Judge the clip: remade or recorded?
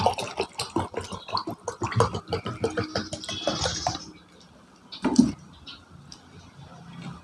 recorded